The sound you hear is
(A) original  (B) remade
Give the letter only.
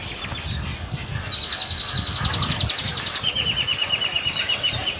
A